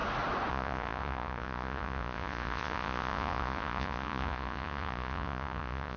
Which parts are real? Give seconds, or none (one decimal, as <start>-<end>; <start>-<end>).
0.0-0.5